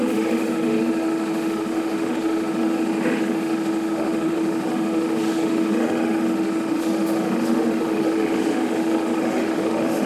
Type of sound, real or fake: fake